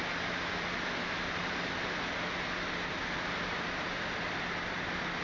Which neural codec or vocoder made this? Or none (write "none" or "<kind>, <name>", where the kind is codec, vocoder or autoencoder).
none